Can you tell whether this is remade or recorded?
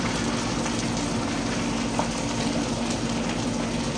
recorded